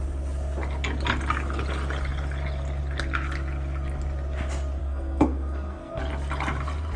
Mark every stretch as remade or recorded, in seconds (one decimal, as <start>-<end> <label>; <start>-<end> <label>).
0.0-4.8 recorded; 4.8-6.0 remade; 6.0-7.0 recorded